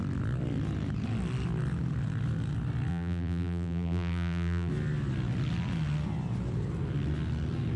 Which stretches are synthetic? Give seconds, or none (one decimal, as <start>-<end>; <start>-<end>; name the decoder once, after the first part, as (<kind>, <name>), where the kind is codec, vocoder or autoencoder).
2.9-4.7 (vocoder, BigVGAN v2)